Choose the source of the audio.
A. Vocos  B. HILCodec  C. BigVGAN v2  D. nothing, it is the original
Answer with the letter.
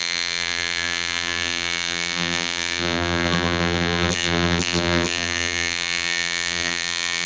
C